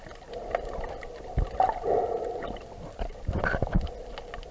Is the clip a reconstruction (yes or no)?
no